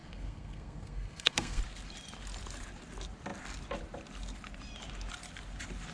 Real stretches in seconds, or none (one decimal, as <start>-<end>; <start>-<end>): 1.6-5.9

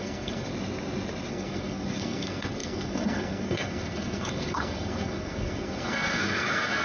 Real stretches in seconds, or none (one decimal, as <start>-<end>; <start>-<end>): 0.5-1.3

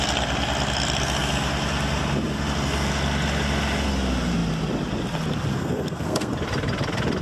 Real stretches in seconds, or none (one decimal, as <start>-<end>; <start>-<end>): 0.0-5.5; 6.3-7.2

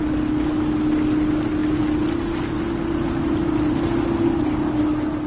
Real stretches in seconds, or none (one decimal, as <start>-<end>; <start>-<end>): 0.0-5.3

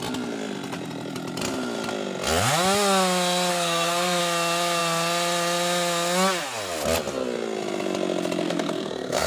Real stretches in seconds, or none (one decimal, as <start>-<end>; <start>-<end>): 0.0-3.5; 4.2-8.4